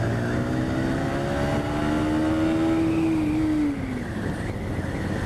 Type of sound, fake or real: real